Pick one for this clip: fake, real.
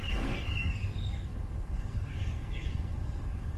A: fake